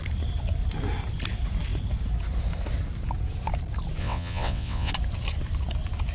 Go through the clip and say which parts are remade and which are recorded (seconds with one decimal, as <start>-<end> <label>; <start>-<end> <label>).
0.0-4.0 recorded; 4.0-4.9 remade; 4.9-6.1 recorded